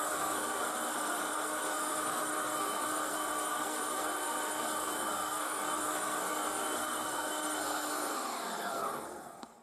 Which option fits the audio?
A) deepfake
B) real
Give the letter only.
A